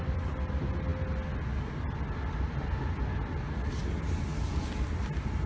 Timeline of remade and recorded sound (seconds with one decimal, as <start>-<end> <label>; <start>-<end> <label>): 0.0-5.5 recorded